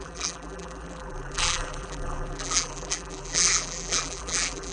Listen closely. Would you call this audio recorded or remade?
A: remade